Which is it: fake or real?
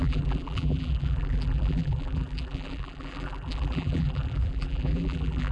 fake